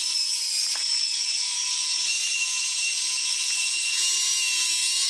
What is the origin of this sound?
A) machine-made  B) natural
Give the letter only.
A